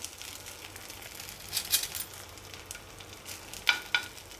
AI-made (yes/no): no